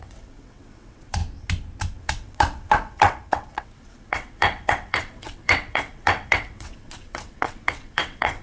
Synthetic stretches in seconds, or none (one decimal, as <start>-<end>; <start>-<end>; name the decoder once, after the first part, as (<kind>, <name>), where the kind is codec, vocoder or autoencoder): 0.0-1.2 (vocoder, WaveNeXt); 2.0-8.4